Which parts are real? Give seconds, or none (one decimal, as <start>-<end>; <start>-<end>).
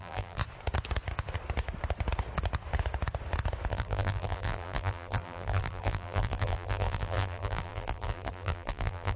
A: 0.4-3.7